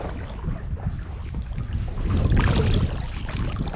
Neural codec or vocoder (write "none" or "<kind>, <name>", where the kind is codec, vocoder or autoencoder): none